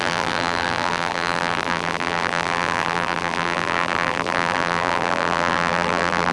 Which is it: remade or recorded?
remade